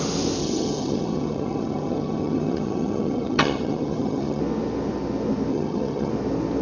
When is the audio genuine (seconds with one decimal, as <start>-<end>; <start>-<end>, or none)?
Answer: 0.0-0.4; 4.4-5.5; 6.1-6.6